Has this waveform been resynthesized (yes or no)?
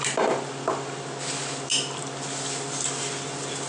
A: no